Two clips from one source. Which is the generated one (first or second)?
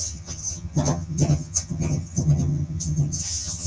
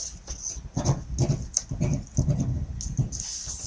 first